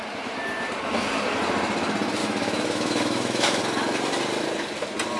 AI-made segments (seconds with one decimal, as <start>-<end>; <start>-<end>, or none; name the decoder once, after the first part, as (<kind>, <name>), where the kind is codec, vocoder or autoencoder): 2.2-3.6 (autoencoder, DAC-VAE)